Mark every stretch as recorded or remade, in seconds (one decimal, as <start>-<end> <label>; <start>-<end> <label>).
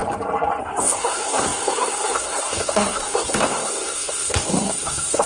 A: 0.0-0.6 recorded; 0.6-5.3 remade